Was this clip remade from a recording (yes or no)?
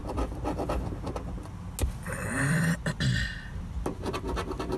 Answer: no